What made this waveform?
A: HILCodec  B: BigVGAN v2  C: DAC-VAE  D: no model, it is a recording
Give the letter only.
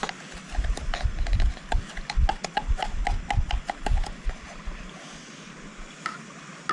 D